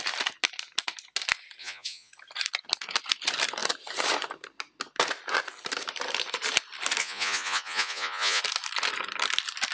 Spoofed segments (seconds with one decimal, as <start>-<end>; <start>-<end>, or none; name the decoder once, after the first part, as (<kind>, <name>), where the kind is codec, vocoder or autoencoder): 1.6-2.1 (vocoder, Vocos); 7.0-8.4